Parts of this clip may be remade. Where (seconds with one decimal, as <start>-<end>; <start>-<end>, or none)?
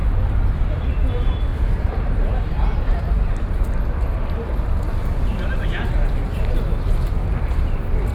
0.0-0.8; 1.5-3.6; 5.3-5.9